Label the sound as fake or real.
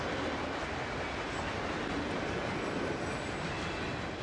real